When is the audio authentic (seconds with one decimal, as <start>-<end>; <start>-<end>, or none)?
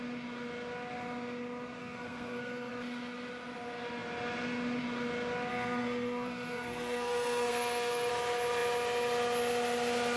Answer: 0.0-1.8; 2.7-5.5; 8.1-10.2